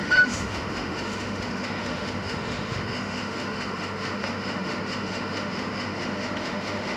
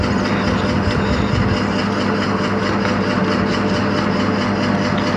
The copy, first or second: first